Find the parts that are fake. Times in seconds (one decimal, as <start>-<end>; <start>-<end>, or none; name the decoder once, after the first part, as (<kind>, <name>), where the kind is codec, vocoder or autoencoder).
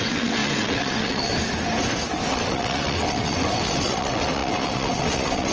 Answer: 0.0-1.3 (vocoder, WaveNeXt); 2.3-5.5